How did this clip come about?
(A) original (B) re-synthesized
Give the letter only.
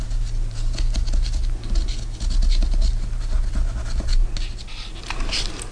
A